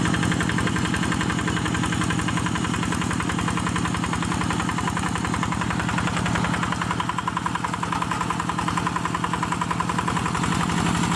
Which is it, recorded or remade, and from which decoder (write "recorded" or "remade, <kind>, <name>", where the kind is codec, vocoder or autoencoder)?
recorded